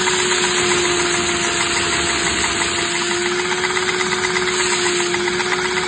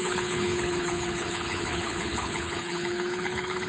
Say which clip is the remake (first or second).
second